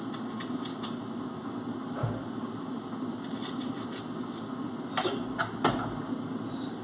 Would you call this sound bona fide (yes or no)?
yes